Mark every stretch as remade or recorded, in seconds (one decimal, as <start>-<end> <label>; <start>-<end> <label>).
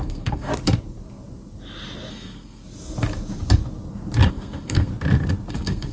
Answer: 0.0-0.5 remade; 0.5-2.1 recorded; 2.1-2.6 remade; 2.6-4.3 recorded; 4.3-4.9 remade; 4.9-5.5 recorded; 5.5-5.9 remade